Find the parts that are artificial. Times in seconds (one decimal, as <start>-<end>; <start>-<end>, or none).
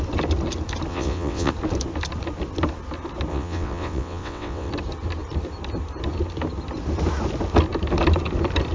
0.9-1.5; 3.3-4.7